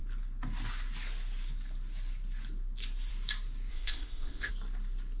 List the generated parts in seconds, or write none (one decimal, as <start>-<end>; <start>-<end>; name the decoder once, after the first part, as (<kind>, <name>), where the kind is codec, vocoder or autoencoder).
3.7-4.5 (codec, ZipCodec)